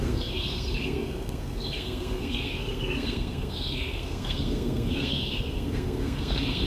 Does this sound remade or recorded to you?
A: remade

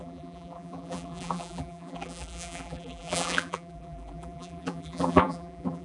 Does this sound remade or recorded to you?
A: remade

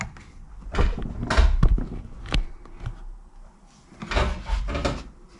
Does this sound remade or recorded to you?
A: recorded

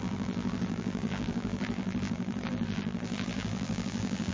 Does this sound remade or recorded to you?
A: remade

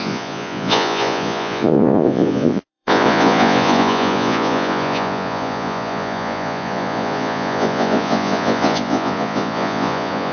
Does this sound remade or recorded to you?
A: remade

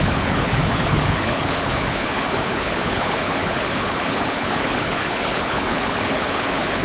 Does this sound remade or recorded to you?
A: remade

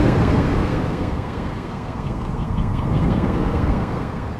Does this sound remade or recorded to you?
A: remade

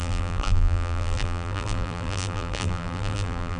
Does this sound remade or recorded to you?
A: remade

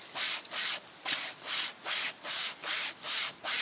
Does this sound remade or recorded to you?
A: recorded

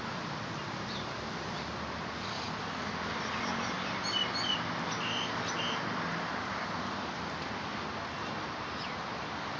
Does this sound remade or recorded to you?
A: recorded